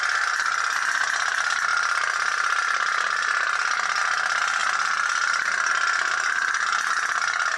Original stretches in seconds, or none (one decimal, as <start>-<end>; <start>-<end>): 0.0-1.7; 4.0-4.6; 5.7-7.6